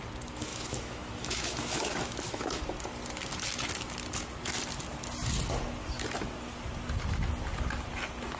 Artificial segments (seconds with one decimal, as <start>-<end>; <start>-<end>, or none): 0.5-2.6